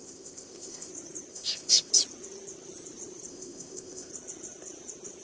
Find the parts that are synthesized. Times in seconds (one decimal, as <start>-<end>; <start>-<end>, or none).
0.0-0.9; 1.3-1.9; 3.3-4.1